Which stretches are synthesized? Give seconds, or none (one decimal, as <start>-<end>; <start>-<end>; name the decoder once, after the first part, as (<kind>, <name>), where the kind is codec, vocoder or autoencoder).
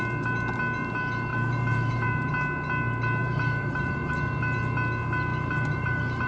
1.3-2.3 (vocoder, BigVGAN v2); 3.2-4.1; 5.3-6.3